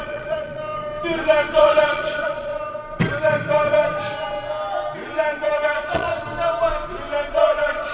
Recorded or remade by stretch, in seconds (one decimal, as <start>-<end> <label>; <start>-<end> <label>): 0.0-0.6 remade; 0.6-1.6 recorded; 1.6-2.5 remade; 2.5-5.5 recorded; 5.5-6.1 remade; 6.1-7.3 recorded; 7.3-7.9 remade